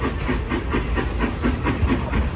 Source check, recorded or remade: recorded